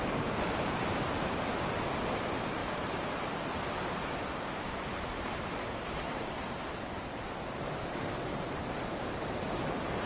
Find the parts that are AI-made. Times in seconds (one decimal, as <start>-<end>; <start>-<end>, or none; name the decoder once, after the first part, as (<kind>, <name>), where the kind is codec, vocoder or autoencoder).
0.0-6.0 (vocoder, BigVGAN v2); 9.2-10.1

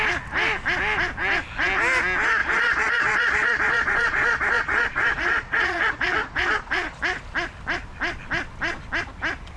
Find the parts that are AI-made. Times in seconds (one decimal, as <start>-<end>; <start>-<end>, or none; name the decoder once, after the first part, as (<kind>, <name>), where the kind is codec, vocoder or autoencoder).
2.4-7.0 (vocoder, Vocos)